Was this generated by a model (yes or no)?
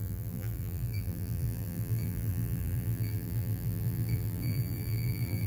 yes